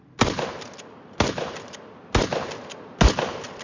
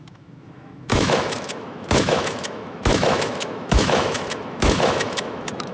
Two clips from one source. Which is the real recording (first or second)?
first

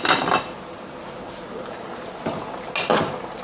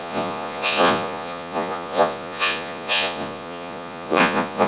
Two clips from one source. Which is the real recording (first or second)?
first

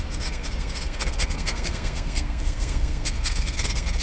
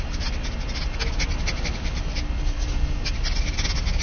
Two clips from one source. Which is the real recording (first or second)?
second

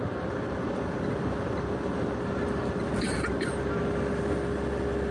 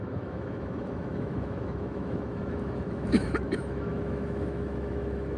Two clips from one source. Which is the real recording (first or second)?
first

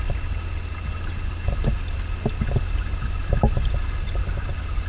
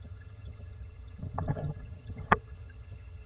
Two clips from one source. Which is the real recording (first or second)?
first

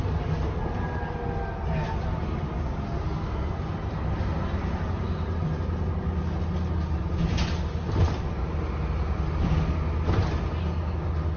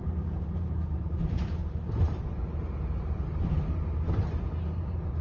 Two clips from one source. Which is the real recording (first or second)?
first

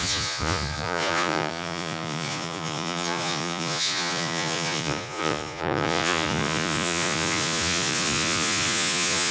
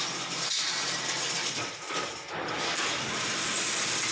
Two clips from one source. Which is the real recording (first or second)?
second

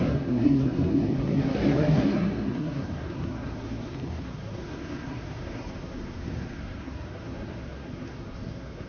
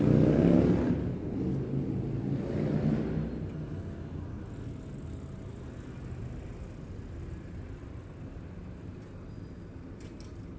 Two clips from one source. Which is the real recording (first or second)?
second